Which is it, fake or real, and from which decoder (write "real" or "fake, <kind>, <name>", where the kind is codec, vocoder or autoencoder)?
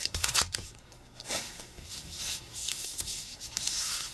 fake, codec, SNAC